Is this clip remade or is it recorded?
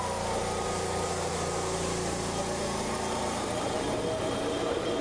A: remade